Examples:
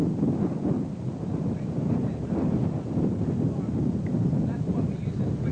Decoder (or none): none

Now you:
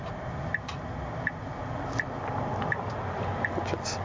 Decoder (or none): none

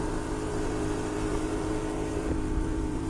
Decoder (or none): vocoder, BigVGAN v2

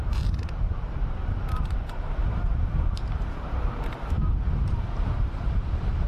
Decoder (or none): vocoder, BigVGAN v2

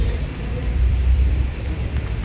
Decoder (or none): vocoder, BigVGAN v2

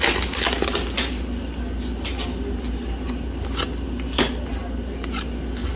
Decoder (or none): none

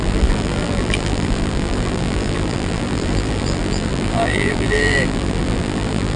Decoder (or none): vocoder, BigVGAN v2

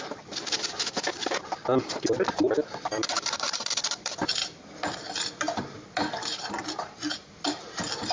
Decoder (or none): vocoder, BigVGAN v2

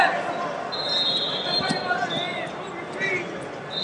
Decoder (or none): none